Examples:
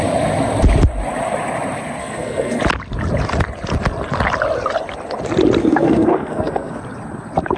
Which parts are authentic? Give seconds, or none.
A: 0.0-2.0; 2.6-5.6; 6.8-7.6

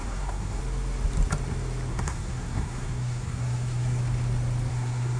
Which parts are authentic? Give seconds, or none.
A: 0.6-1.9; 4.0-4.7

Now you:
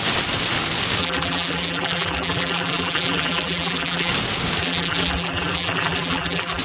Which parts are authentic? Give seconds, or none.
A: 0.0-1.0; 4.1-4.6

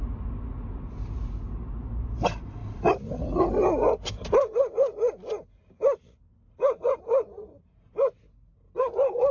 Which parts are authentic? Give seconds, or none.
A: 0.0-9.3

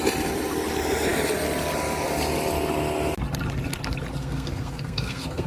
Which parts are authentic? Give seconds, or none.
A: 0.0-4.2

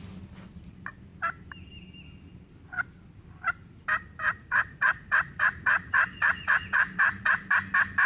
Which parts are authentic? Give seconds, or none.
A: 0.0-4.2; 7.4-8.1